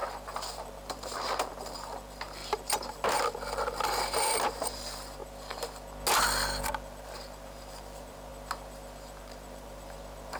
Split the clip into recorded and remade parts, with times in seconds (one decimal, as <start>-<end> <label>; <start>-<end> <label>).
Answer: 0.0-2.4 remade; 2.4-2.9 recorded; 2.9-5.2 remade; 5.2-6.6 recorded; 6.6-8.3 remade; 8.3-9.2 recorded; 9.2-10.4 remade